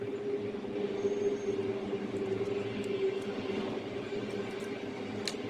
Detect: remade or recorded recorded